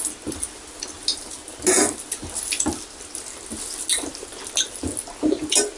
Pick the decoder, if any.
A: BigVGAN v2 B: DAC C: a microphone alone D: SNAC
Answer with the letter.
C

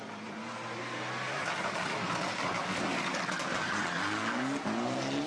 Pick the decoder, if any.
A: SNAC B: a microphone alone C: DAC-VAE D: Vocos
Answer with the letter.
B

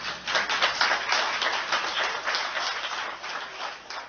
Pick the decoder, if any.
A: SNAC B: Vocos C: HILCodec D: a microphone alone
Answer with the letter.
D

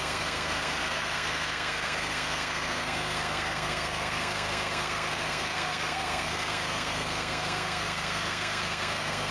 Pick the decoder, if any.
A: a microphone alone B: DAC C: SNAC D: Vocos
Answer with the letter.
C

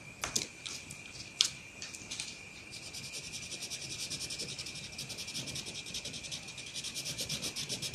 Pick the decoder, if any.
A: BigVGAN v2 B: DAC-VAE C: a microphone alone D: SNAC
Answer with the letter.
A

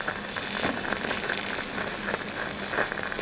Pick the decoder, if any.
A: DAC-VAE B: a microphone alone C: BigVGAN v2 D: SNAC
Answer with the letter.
B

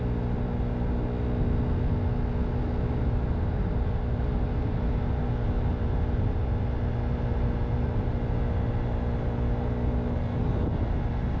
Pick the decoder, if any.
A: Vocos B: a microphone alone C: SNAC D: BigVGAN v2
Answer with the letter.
B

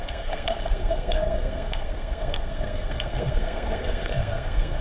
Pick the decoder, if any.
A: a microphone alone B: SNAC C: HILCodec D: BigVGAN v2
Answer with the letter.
B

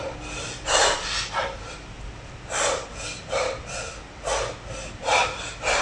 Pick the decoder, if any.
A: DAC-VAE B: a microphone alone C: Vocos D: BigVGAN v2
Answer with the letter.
B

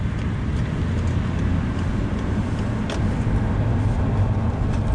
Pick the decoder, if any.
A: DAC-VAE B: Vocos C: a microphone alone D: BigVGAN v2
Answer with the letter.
C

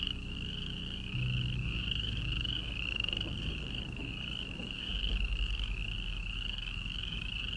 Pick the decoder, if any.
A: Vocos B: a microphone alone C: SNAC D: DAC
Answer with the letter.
D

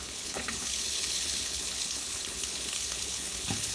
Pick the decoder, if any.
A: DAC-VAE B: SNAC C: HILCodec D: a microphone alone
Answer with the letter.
C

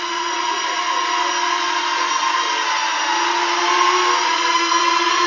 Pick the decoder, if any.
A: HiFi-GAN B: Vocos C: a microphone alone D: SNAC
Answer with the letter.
C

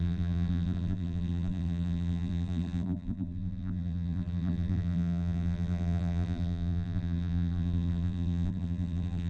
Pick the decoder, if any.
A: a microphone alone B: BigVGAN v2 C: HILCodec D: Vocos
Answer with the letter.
B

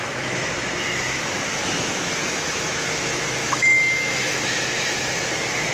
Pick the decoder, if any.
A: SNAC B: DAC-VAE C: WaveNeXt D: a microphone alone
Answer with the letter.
B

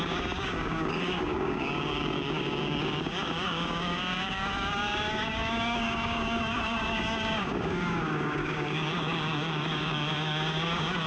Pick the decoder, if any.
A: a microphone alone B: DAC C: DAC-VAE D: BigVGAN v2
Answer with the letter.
B